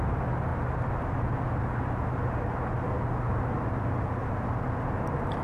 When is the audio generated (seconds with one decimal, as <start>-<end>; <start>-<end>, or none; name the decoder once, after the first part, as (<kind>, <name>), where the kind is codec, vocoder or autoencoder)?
none